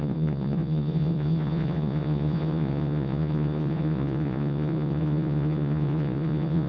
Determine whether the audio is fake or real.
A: fake